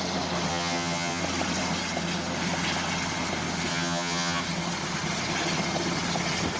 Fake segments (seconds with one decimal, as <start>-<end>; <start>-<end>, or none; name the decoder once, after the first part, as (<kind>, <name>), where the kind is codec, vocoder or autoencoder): 0.5-1.2 (vocoder, HiFi-GAN); 3.7-4.4